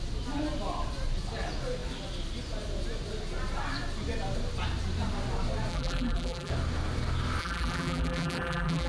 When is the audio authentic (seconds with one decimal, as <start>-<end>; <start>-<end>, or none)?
0.0-5.7; 6.5-7.4